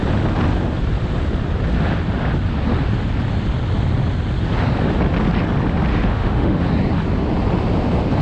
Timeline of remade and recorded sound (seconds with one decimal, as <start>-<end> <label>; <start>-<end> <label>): 0.0-5.9 recorded; 5.9-6.6 remade; 6.6-8.2 recorded